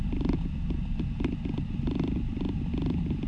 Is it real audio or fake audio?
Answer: real